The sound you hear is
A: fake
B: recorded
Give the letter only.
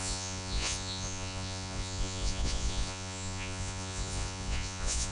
A